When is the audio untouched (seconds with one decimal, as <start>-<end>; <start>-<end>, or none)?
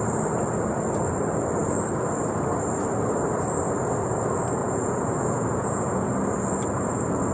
0.0-4.6; 6.1-7.3